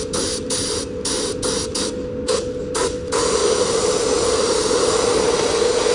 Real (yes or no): yes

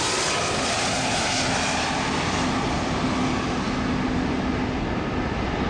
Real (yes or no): yes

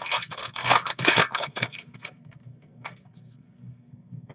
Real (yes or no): no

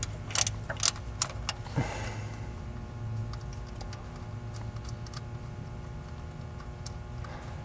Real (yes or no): yes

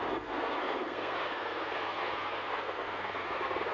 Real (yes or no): no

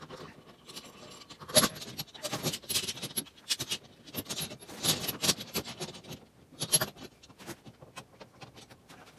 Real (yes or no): yes